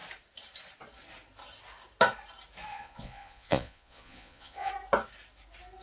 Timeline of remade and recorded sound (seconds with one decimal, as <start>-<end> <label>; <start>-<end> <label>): 0.0-2.7 recorded; 2.7-4.7 remade; 4.7-5.8 recorded